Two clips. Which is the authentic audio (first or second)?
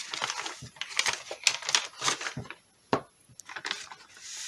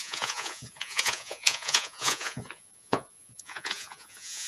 first